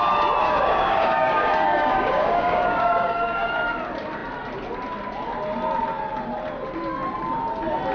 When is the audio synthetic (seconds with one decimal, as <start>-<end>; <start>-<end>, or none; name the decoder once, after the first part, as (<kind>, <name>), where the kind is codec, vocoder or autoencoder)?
0.4-3.5 (codec, DAC)

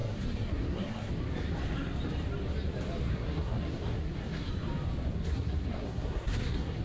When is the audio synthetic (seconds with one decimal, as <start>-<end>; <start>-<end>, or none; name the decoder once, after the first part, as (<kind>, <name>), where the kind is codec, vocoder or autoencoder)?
0.0-1.1 (codec, SNAC); 3.1-4.5; 5.1-6.8

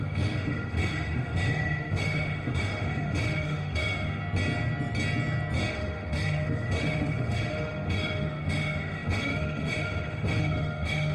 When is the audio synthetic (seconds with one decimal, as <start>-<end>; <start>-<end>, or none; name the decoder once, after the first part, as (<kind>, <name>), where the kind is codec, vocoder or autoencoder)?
0.0-4.2 (autoencoder, DAC-VAE); 5.7-11.1

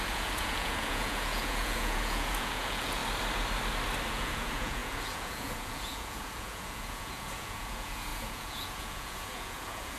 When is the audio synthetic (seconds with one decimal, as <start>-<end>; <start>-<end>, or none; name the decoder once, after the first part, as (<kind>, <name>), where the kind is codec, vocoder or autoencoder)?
0.0-3.0 (vocoder, Vocos); 4.1-10.0

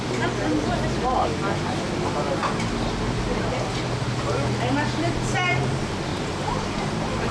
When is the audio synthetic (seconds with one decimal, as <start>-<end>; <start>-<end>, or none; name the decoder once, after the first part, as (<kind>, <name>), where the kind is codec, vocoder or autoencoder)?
6.1-7.3 (vocoder, BigVGAN v2)